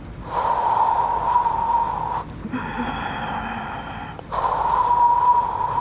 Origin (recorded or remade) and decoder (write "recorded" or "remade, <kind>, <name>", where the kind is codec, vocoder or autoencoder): recorded